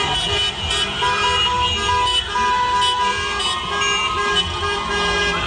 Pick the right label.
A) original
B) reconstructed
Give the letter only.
A